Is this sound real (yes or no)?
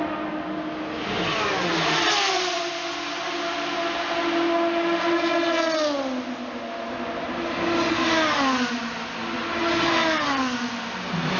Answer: yes